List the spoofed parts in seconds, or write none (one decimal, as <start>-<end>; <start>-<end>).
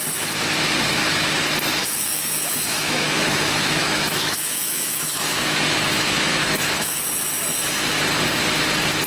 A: 1.8-7.0